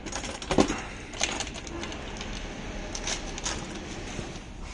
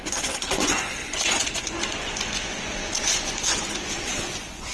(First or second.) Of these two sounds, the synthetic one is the second